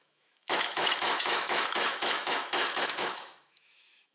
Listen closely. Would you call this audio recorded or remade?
remade